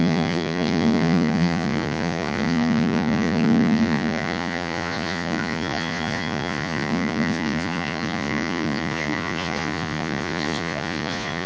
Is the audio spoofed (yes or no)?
yes